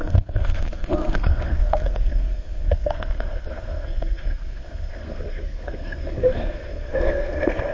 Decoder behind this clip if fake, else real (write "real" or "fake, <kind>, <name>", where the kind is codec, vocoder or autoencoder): fake, codec, SNAC